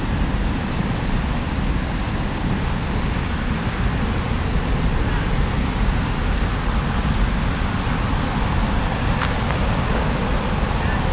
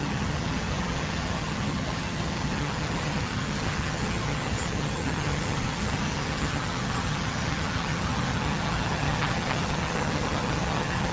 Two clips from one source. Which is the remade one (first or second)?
second